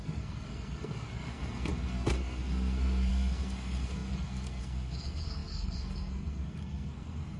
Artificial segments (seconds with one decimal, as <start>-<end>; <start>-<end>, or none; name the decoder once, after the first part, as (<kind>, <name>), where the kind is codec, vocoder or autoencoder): 0.0-7.4 (codec, SNAC)